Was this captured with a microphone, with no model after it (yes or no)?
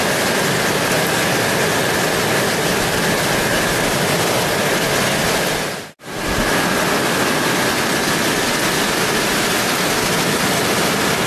yes